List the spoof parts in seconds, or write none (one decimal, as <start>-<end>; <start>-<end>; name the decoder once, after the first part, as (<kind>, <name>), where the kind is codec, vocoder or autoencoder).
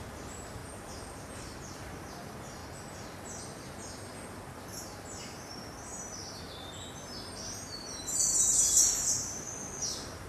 0.0-2.6 (vocoder, BigVGAN v2); 3.4-10.3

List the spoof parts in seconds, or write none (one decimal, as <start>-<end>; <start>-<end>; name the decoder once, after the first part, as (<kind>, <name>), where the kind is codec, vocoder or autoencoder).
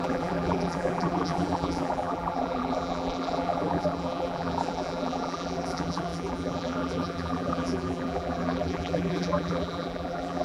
0.0-10.4 (vocoder, BigVGAN v2)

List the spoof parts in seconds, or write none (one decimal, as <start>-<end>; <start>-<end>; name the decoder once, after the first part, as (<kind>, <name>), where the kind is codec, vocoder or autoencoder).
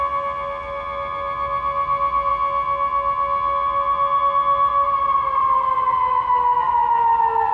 4.7-5.8 (vocoder, BigVGAN v2)